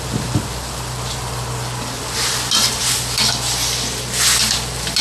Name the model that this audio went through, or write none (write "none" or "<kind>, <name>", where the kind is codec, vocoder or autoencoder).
none